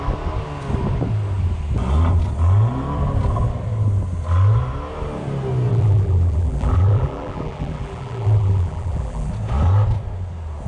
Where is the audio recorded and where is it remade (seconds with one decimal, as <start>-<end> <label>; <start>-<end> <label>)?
0.0-5.7 recorded; 5.7-9.3 remade; 9.3-10.7 recorded